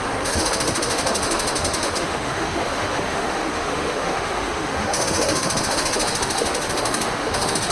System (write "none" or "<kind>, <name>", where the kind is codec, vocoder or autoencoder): autoencoder, DAC-VAE